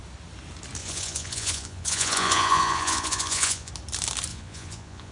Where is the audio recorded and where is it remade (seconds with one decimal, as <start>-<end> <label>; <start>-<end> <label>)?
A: 0.0-0.8 recorded; 0.8-3.7 remade; 3.7-4.3 recorded; 4.3-5.1 remade